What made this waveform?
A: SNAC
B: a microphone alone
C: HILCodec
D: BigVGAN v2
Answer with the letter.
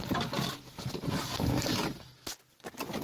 B